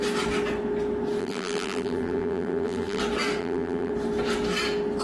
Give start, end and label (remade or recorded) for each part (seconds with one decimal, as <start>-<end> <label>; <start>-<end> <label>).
0.0-1.2 recorded; 1.2-3.0 remade; 3.0-3.4 recorded; 3.4-3.9 remade; 3.9-5.0 recorded